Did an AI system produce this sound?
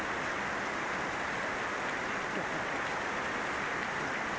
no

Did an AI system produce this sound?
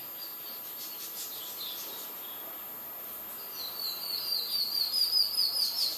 no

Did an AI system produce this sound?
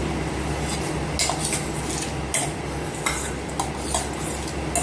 no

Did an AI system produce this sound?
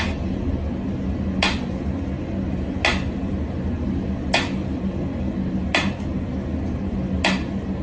no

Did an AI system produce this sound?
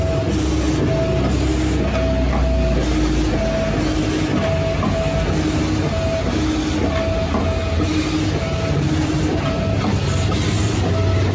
no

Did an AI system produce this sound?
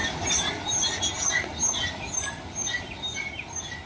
no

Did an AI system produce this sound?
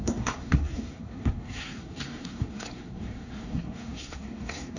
yes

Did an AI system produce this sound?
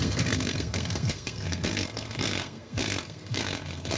yes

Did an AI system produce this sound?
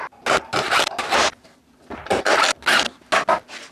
no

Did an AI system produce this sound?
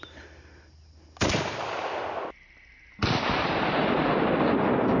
no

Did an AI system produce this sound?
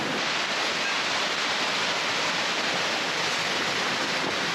no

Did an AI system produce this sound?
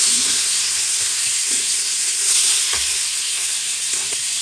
yes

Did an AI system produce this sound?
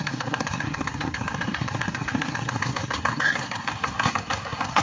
yes